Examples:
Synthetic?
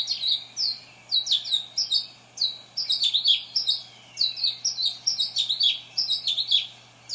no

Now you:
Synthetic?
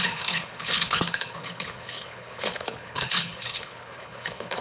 yes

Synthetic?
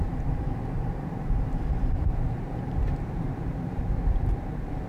yes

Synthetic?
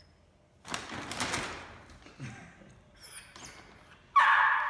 no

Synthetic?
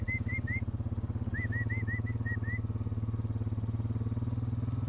no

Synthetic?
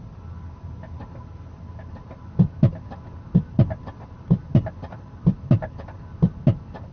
no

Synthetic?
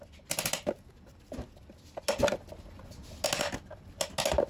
no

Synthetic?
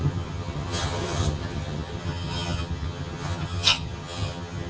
yes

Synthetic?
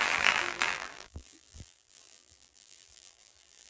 yes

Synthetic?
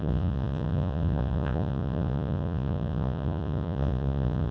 yes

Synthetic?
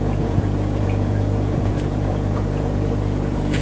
yes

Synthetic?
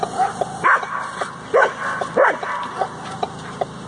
no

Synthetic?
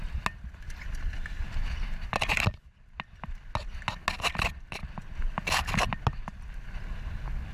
no